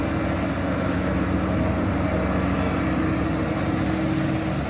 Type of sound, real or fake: real